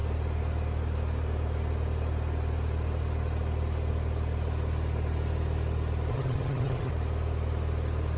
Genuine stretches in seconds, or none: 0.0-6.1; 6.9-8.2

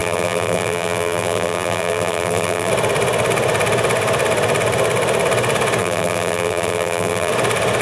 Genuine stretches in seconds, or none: 2.7-5.8; 7.3-7.8

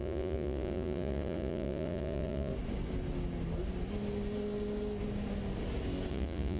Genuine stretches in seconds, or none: 2.5-6.1

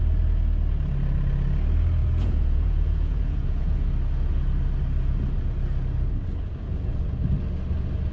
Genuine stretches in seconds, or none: 0.0-2.0; 3.9-8.1

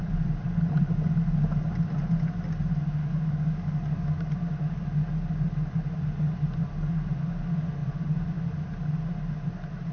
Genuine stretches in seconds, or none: 0.0-3.0; 4.3-9.9